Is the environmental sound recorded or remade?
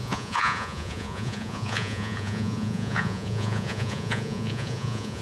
remade